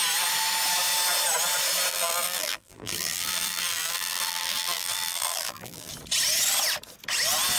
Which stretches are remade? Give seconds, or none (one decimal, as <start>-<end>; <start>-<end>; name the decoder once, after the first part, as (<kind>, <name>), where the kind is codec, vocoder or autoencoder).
1.9-5.9 (vocoder, BigVGAN v2)